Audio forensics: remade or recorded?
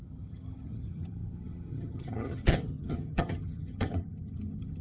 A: remade